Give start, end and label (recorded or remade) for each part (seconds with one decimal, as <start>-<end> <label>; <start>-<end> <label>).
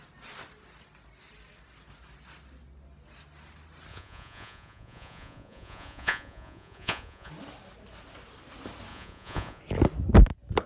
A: 0.0-3.9 recorded; 3.9-7.3 remade; 7.3-8.9 recorded; 8.9-9.6 remade; 9.6-10.7 recorded